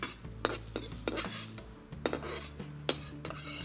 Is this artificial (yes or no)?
no